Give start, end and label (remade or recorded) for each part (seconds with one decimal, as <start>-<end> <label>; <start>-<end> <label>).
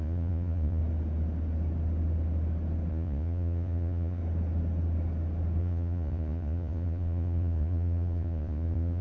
0.0-0.8 remade; 0.8-2.9 recorded; 2.9-4.2 remade; 4.2-5.6 recorded; 5.6-9.0 remade